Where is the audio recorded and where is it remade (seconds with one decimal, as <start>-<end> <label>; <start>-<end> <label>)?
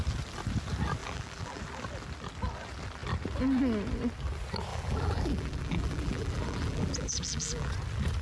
0.0-1.0 recorded; 1.0-1.6 remade; 1.6-4.7 recorded; 4.7-7.7 remade; 7.7-8.2 recorded